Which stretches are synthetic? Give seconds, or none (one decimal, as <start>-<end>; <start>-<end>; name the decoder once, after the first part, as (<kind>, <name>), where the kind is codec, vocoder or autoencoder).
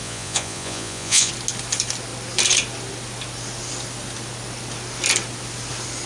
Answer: 0.0-1.3 (vocoder, Vocos)